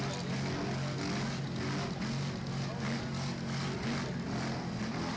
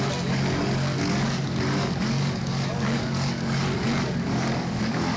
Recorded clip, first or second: first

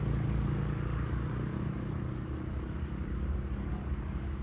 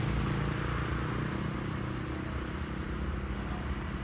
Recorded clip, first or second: second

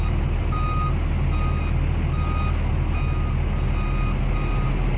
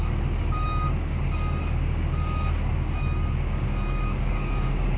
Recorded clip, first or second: first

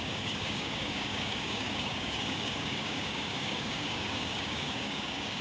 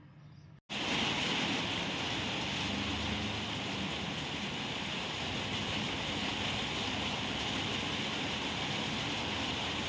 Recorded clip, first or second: second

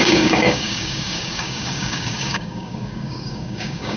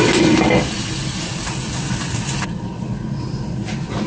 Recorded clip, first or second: second